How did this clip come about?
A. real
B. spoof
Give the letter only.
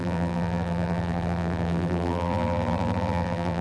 B